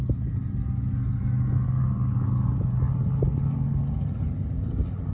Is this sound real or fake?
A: real